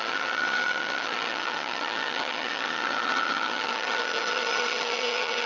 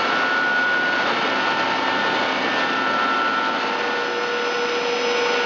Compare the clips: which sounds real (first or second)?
second